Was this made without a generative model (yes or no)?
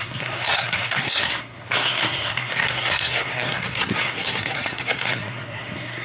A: no